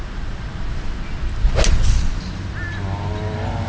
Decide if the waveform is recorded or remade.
recorded